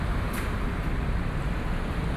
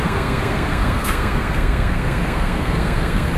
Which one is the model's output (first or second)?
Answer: second